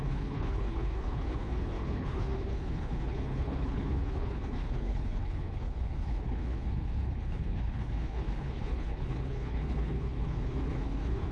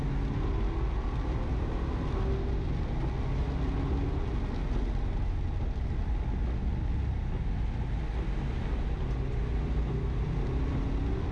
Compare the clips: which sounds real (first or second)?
second